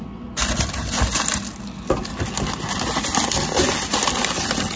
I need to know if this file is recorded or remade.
recorded